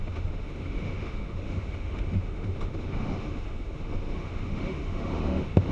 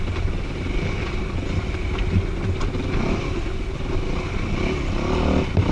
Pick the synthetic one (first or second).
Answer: first